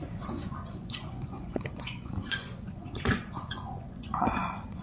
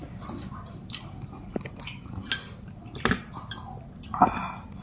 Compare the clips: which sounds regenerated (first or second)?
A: first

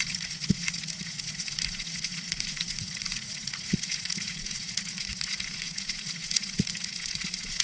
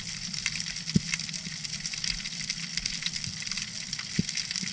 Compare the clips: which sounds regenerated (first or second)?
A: first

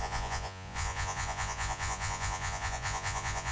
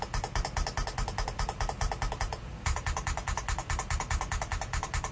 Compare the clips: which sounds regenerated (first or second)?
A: first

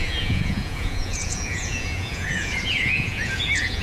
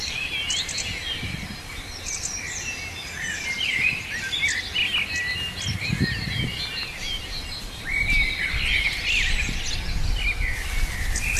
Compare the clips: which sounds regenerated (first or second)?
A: first